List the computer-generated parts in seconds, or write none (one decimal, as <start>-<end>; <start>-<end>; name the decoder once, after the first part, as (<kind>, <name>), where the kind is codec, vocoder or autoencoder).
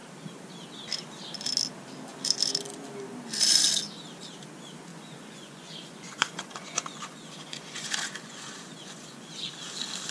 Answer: 4.9-9.5 (vocoder, Vocos)